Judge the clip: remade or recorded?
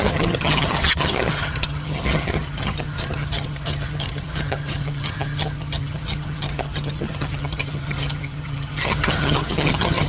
remade